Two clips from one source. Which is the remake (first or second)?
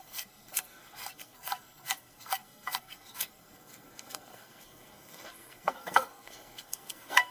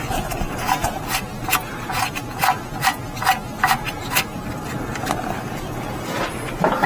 first